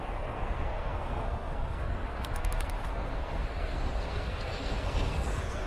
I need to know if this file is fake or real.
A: fake